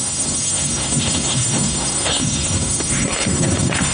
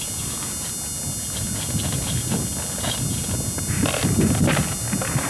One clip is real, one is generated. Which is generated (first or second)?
first